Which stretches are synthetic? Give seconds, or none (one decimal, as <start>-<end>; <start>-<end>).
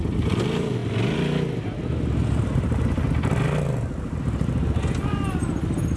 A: none